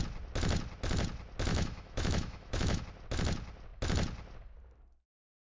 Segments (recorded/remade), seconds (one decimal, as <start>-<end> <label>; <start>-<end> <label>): 0.0-1.5 recorded; 1.5-2.8 remade; 2.8-5.4 recorded